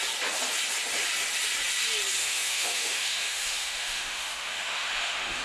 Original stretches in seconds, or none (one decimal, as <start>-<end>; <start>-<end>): 0.0-2.2